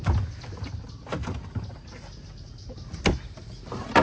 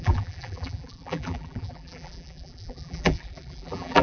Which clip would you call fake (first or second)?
second